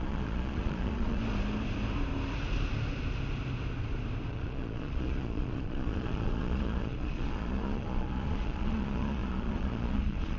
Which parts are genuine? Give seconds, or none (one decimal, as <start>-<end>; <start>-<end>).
1.2-4.3